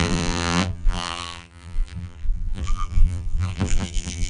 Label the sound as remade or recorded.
remade